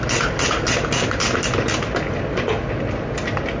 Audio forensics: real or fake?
real